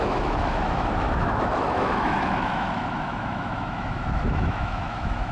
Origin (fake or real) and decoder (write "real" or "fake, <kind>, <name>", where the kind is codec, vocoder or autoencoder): fake, autoencoder, DAC-VAE